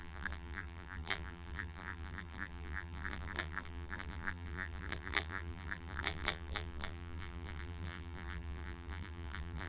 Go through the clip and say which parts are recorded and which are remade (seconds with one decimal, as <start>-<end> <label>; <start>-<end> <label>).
0.0-9.7 remade